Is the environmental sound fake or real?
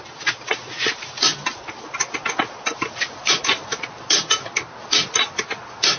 real